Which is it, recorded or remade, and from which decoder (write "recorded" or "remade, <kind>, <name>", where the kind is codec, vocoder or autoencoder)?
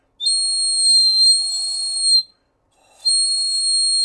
recorded